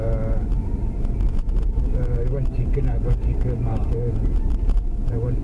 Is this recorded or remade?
remade